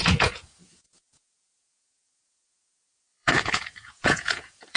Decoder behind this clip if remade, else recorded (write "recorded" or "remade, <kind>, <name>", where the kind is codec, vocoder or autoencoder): remade, vocoder, Vocos